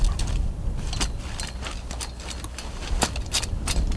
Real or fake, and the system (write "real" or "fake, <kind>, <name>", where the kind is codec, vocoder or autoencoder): real